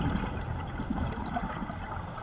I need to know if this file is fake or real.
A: real